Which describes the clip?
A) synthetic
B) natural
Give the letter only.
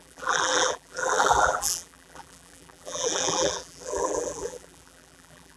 A